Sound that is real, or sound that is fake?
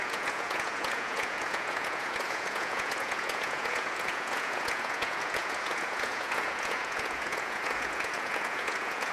fake